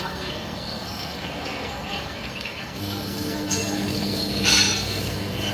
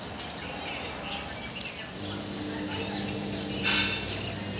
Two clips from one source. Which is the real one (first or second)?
second